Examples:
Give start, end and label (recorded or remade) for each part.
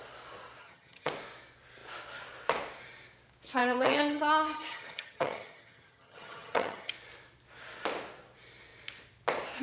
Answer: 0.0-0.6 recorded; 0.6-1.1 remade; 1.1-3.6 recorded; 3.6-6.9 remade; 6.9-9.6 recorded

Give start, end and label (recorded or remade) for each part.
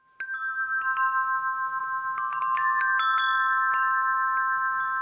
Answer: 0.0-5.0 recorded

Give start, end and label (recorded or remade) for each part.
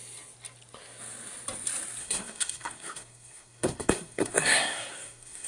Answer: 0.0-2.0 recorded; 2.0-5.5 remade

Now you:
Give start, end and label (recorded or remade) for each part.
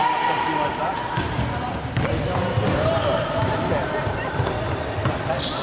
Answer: 0.0-5.6 recorded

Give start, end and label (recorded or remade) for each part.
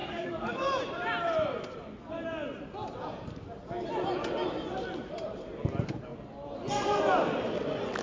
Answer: 0.0-0.7 remade; 0.7-8.0 recorded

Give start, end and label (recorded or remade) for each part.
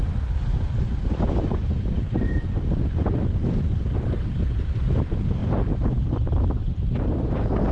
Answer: 0.0-5.4 recorded; 5.4-7.2 remade; 7.2-7.7 recorded